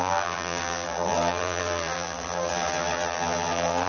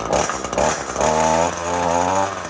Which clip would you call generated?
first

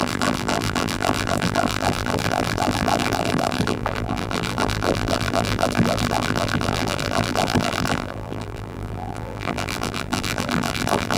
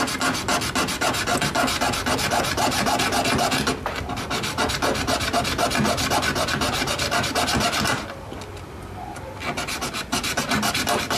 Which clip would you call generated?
first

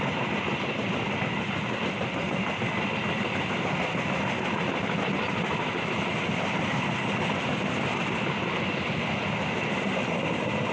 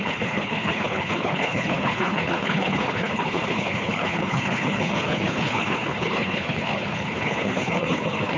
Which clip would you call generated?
second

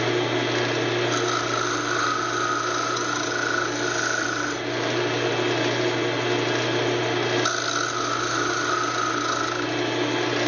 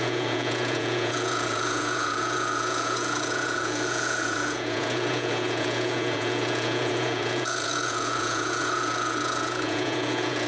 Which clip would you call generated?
second